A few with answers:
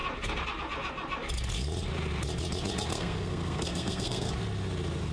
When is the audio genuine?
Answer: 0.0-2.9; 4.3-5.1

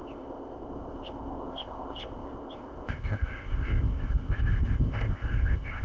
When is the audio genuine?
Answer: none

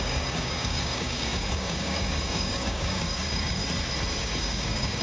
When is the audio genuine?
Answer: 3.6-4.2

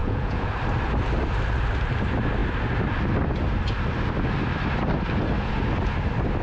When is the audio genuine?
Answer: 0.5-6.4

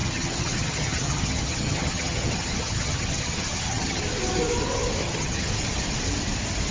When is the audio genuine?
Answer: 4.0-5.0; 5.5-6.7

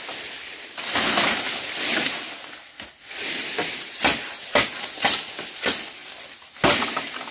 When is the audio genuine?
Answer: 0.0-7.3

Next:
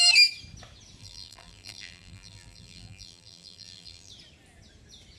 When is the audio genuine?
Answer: 0.0-1.0; 4.1-5.2